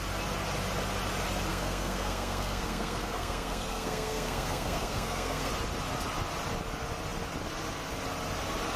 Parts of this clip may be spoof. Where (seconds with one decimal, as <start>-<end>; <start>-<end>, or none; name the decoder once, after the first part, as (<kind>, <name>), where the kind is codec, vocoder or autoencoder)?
1.5-5.5 (codec, SNAC)